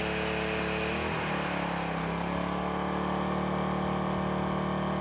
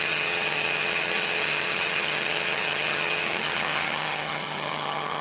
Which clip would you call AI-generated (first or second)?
second